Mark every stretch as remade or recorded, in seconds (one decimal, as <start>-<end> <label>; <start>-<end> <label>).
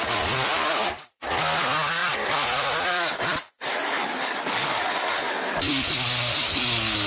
0.0-2.0 recorded; 2.0-3.5 remade; 3.5-7.1 recorded